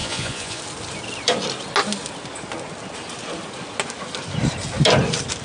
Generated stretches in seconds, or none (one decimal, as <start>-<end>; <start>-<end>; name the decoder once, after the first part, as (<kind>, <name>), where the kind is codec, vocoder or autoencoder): 0.0-0.6 (vocoder, Vocos)